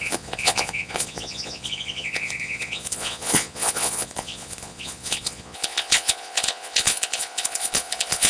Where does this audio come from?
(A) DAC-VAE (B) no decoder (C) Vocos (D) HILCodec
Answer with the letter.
C